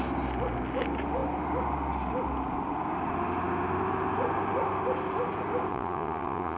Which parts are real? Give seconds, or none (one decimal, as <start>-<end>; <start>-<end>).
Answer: 0.0-5.7